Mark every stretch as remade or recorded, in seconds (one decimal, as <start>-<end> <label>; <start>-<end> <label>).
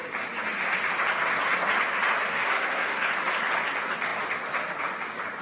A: 0.0-2.3 recorded; 2.3-3.1 remade; 3.1-5.4 recorded